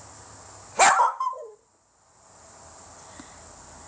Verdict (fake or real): real